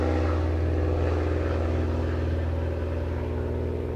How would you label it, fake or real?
real